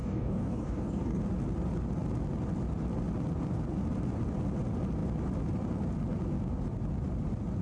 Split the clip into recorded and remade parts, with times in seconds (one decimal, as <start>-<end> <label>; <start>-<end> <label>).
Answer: 0.0-1.2 remade; 1.2-7.6 recorded